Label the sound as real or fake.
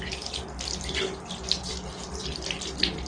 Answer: real